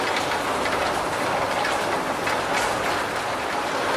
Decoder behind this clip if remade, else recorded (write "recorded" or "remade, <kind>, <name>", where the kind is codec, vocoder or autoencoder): recorded